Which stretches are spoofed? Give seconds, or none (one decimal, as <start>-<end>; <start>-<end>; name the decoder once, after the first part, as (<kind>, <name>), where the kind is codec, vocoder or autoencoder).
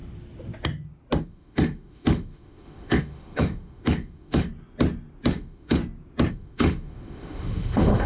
1.2-4.5 (autoencoder, DAC-VAE); 5.3-5.8; 6.3-8.1